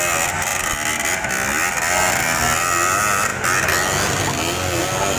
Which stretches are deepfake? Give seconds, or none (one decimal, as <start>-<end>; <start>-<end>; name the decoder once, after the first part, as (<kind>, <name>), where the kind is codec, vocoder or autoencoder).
none